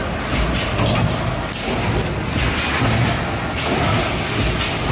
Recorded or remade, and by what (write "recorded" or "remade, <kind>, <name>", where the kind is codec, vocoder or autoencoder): recorded